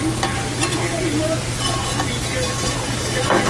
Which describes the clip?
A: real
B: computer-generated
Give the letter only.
A